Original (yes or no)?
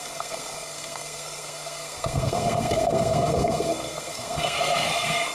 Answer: no